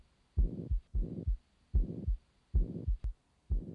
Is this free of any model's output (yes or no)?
yes